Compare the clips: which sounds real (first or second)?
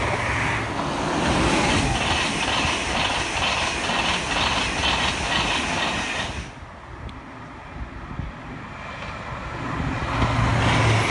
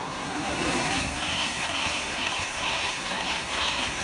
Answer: first